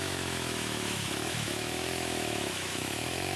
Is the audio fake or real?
fake